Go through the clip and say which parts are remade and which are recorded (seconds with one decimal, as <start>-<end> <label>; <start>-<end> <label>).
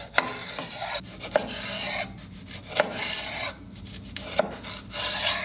0.0-0.4 recorded; 0.4-1.2 remade; 1.2-2.9 recorded; 2.9-4.6 remade; 4.6-5.4 recorded